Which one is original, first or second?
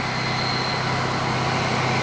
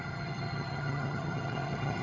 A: first